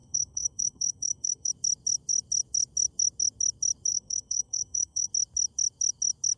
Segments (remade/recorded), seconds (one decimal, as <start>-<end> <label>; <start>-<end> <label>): 0.0-1.5 remade; 1.5-3.9 recorded; 3.9-5.1 remade; 5.1-6.4 recorded